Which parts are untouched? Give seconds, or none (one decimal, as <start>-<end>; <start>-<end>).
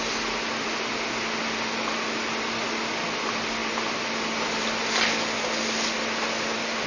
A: 0.0-6.9